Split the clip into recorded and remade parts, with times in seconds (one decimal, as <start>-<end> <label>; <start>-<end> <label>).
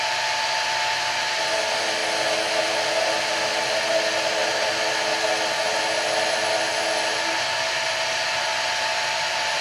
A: 0.0-9.6 recorded